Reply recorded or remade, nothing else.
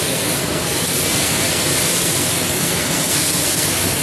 remade